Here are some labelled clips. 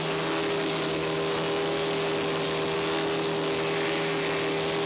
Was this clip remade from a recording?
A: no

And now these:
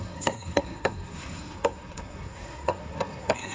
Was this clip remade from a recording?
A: yes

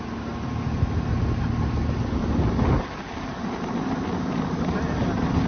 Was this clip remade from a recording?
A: no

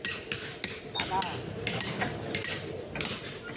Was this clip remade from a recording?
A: no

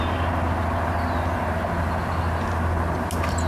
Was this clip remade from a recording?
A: no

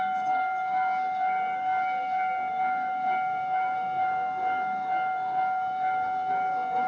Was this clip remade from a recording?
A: yes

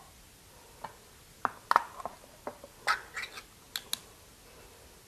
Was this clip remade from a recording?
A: no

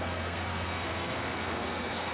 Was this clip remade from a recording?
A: yes